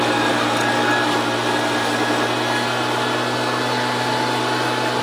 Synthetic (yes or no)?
no